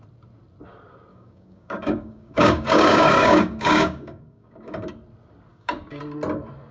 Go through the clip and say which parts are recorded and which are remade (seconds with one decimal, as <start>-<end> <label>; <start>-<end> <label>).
0.0-1.1 recorded; 1.1-4.9 remade; 4.9-5.5 recorded; 5.5-6.0 remade; 6.0-6.7 recorded